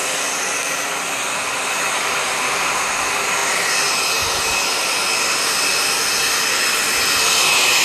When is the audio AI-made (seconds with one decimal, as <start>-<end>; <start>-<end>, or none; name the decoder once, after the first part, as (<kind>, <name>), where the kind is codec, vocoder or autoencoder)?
0.0-3.0 (vocoder, BigVGAN v2)